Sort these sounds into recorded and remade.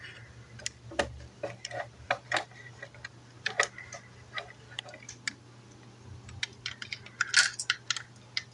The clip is recorded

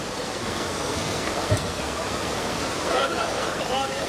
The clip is remade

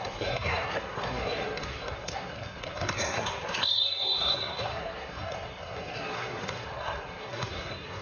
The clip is remade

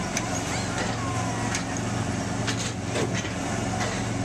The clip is recorded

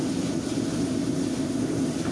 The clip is recorded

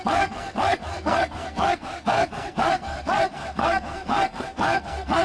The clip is remade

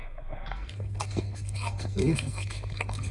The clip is remade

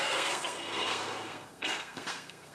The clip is remade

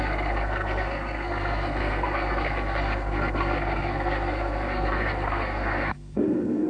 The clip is remade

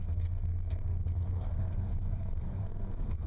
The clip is remade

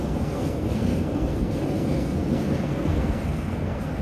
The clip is remade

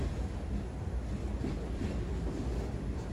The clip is recorded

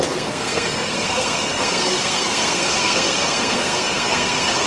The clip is remade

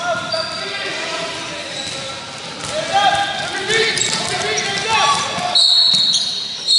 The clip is recorded